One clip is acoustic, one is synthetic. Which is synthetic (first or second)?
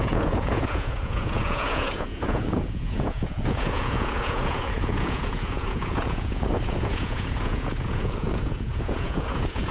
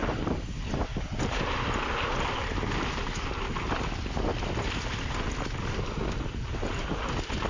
first